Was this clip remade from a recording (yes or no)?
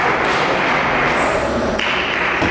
no